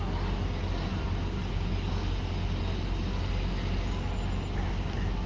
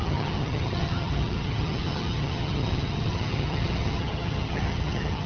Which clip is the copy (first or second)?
second